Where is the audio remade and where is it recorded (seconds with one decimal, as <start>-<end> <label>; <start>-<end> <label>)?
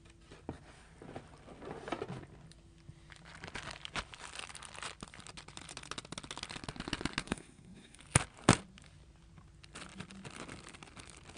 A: 0.0-7.2 recorded; 7.2-8.0 remade; 8.0-11.4 recorded